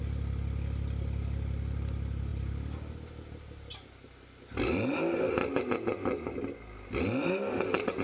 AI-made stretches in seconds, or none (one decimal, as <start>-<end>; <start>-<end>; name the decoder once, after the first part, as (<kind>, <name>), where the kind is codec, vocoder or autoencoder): none